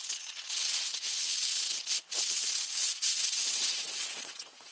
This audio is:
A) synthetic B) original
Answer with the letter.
A